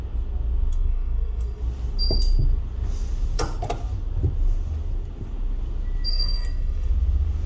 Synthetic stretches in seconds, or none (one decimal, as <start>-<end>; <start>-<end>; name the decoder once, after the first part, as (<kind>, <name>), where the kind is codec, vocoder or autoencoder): 0.7-1.6 (codec, SNAC); 6.1-6.9